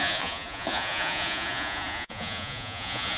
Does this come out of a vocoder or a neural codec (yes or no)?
yes